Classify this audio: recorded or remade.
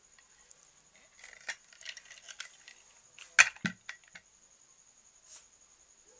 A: recorded